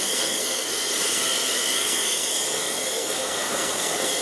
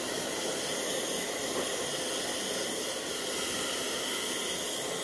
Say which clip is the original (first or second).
second